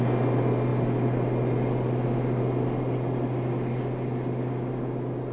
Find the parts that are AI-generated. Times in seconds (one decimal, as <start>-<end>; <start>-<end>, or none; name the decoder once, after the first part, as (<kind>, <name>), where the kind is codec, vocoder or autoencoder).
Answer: none